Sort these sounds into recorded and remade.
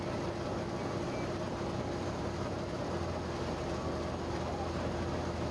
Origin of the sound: recorded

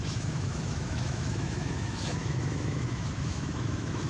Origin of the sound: remade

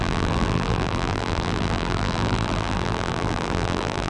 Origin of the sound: remade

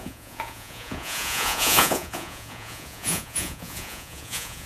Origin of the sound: remade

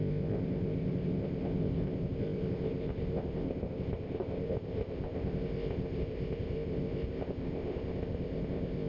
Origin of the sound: remade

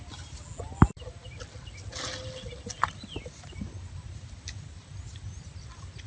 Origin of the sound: recorded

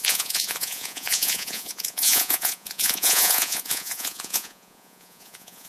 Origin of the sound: remade